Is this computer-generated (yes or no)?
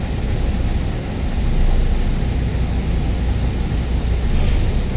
no